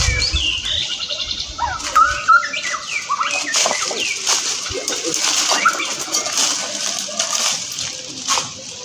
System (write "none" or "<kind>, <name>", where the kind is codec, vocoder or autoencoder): none